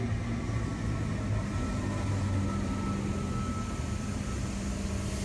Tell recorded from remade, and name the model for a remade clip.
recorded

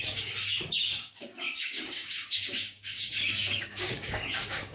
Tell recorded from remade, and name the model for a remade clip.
remade, codec, DAC